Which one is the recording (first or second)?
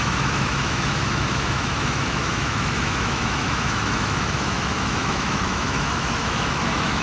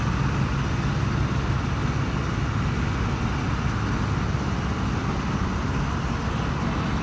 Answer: second